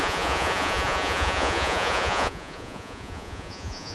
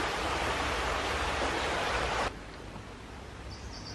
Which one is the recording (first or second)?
second